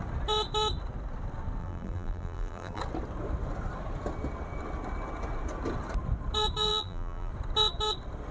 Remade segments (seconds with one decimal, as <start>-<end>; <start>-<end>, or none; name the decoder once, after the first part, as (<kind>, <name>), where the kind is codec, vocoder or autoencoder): 1.6-2.8 (vocoder, BigVGAN v2); 6.7-7.3